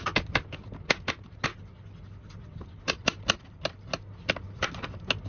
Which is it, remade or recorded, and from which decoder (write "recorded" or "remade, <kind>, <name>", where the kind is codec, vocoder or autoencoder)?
recorded